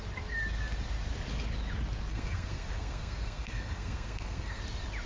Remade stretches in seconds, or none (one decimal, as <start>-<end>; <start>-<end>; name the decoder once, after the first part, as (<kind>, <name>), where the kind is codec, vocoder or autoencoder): 2.1-4.6 (codec, SNAC)